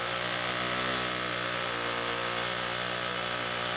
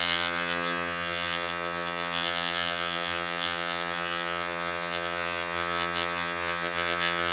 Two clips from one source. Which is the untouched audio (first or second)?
first